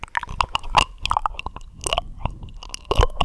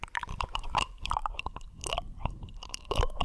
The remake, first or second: second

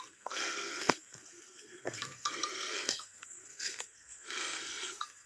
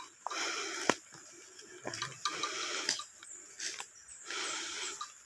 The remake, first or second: first